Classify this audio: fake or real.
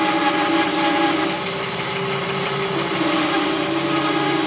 real